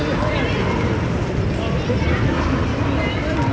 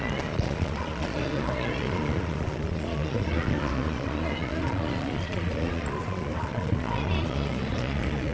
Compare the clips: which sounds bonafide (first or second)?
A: first